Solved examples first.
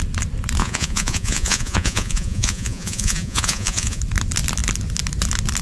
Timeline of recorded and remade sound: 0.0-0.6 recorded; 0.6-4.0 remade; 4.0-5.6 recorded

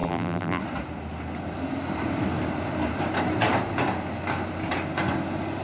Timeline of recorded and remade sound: 0.0-0.6 remade; 0.6-5.6 recorded